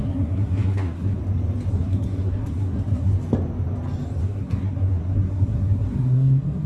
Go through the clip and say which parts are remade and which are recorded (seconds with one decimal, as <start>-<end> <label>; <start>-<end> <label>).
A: 0.0-1.2 remade; 1.2-1.7 recorded; 1.7-3.1 remade; 3.1-4.2 recorded; 4.2-6.7 remade